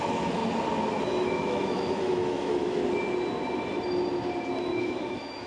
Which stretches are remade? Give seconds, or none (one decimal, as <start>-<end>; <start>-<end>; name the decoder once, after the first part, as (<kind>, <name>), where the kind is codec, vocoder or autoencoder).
0.0-0.4 (autoencoder, DAC-VAE); 1.0-2.8; 4.6-5.5